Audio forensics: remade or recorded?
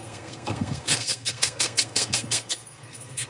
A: remade